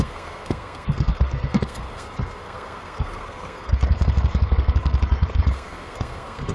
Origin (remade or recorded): remade